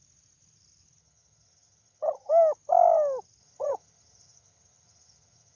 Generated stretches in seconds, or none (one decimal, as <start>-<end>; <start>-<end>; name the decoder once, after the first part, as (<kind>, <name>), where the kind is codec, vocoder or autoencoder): 1.0-2.3 (vocoder, HiFi-GAN); 3.4-5.6